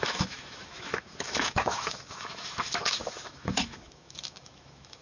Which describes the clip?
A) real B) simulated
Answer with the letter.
B